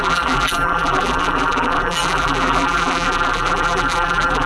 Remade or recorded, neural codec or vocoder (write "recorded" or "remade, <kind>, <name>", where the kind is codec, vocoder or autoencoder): remade, vocoder, BigVGAN v2